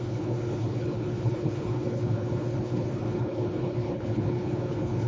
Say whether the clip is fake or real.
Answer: fake